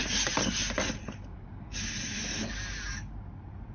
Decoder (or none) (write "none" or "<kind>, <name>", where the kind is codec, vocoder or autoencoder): none